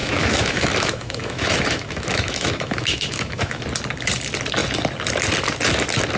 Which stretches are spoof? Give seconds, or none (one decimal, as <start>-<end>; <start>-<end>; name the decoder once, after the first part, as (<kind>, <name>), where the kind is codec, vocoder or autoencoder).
0.0-3.6 (autoencoder, DAC-VAE)